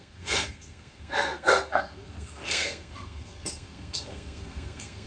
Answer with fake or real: fake